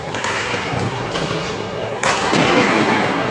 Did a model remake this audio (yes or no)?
yes